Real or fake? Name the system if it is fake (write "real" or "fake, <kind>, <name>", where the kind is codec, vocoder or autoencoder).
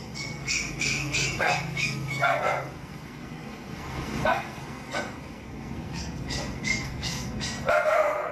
fake, codec, SNAC